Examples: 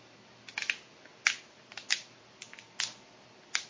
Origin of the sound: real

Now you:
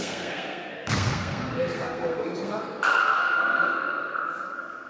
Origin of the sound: fake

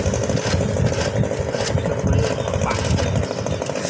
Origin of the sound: real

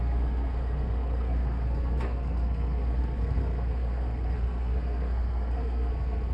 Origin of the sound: fake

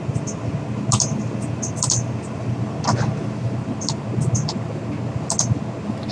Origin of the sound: real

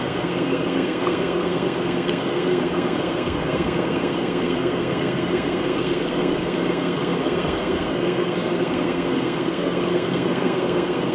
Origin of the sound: fake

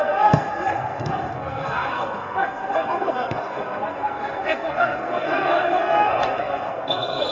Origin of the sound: fake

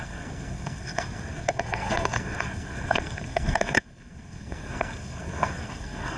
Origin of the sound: fake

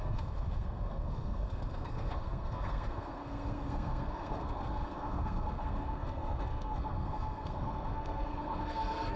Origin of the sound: fake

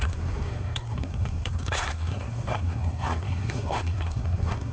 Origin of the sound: fake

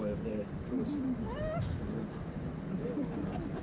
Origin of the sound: real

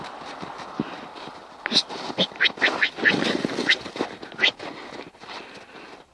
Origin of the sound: real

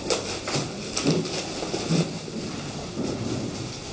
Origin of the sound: real